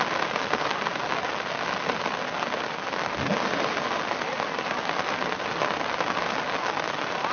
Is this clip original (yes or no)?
yes